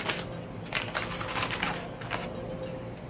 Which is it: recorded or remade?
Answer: recorded